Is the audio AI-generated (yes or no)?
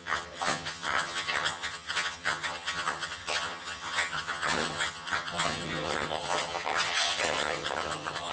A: yes